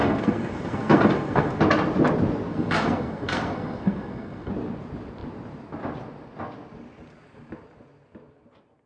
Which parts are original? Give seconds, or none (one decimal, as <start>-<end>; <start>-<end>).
1.6-2.5; 4.5-8.9